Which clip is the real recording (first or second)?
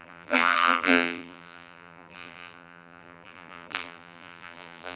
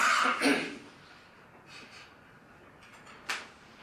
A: second